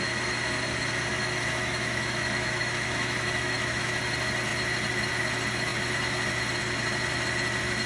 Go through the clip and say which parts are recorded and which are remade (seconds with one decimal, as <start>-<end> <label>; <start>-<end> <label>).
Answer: 0.0-1.1 recorded; 1.1-4.0 remade; 4.0-7.9 recorded